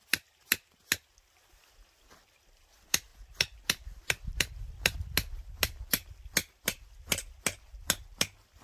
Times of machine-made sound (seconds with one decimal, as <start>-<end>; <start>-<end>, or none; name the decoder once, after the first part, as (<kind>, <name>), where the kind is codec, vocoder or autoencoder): none